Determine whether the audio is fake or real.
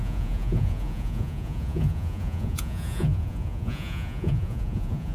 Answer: fake